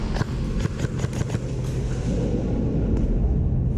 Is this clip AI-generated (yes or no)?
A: no